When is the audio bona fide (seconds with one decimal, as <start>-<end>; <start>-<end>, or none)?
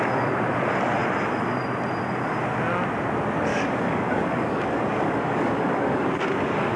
0.0-3.5